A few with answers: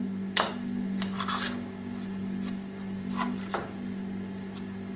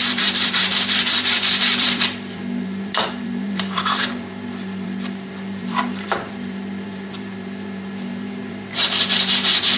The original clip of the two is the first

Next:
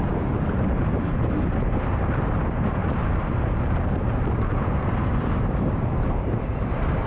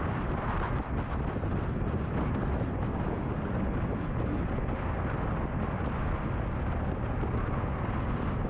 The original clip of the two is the second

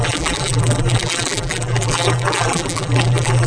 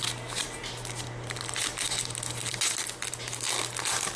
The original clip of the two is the second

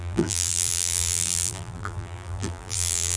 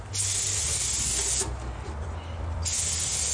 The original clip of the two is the second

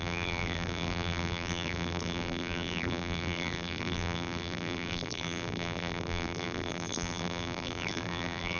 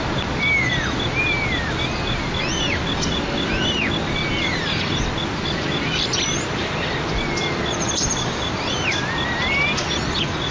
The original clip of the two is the second